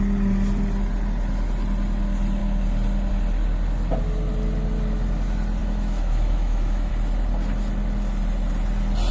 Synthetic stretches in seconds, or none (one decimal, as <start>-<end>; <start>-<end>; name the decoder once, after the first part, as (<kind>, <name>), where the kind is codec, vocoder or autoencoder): 5.6-6.9 (autoencoder, DAC-VAE)